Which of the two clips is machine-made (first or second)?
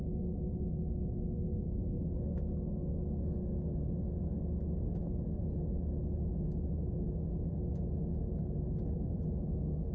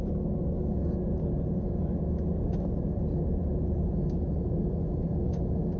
second